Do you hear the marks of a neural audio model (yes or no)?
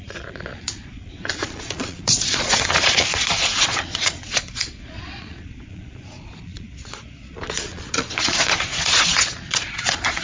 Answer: yes